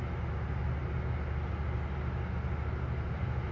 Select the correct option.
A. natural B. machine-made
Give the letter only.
A